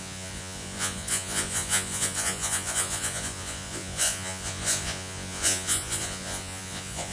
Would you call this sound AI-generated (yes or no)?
yes